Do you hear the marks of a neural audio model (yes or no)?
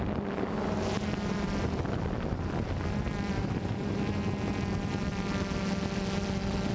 no